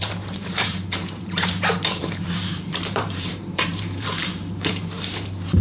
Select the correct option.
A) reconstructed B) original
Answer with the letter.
A